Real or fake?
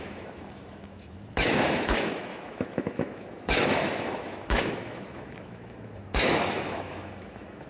fake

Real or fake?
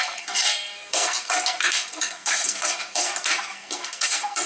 fake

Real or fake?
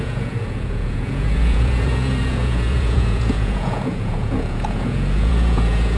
fake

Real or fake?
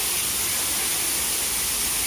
real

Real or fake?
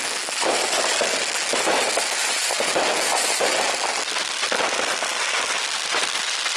real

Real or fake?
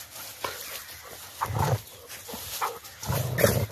real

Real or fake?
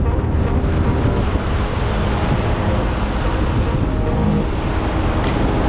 real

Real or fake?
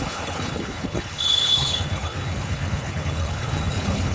fake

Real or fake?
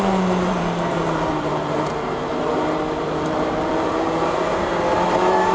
fake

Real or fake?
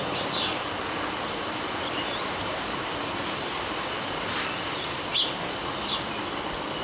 real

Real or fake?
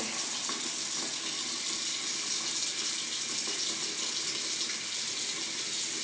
real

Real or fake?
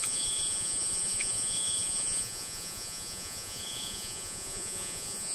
fake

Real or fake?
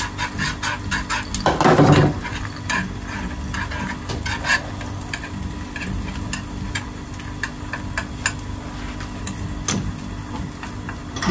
real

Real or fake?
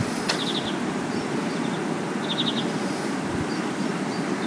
real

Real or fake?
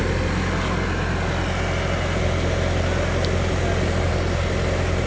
real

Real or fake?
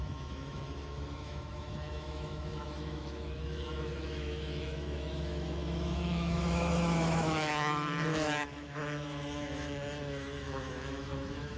fake